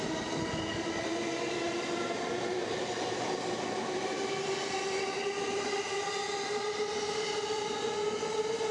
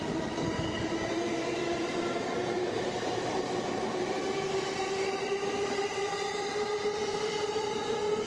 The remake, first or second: second